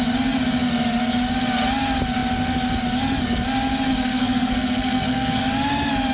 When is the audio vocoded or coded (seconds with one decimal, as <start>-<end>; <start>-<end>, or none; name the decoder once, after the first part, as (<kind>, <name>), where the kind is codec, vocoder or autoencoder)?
3.9-5.4 (codec, SNAC)